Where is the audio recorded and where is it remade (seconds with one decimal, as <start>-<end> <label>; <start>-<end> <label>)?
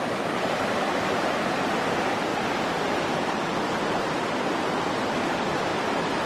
0.0-2.3 remade; 2.3-4.9 recorded; 4.9-6.3 remade